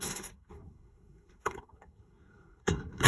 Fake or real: fake